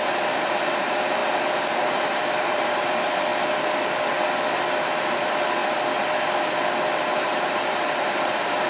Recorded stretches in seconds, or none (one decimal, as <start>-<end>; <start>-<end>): 1.2-1.7; 3.3-5.1; 5.6-7.1

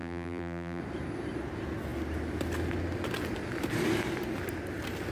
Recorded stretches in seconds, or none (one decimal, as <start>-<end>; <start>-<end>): 0.8-5.1

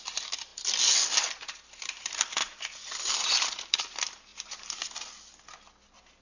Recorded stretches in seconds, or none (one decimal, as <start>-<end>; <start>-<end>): 0.5-1.8; 2.4-3.4; 4.3-6.2

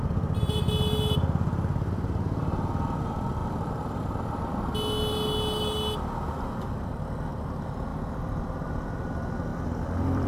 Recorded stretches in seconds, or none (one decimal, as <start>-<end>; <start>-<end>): 0.0-3.4; 4.7-7.9; 8.7-9.5

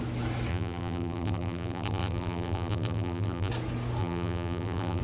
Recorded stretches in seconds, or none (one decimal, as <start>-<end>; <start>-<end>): 0.0-0.5; 3.5-4.0

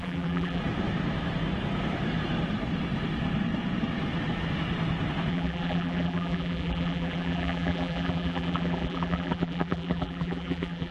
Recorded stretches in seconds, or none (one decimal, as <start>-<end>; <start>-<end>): 0.6-5.3